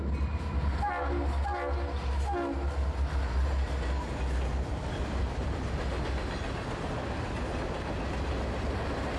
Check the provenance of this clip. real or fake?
real